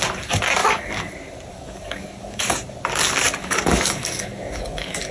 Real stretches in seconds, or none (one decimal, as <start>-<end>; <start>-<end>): 0.0-0.6; 1.1-1.5; 2.5-3.4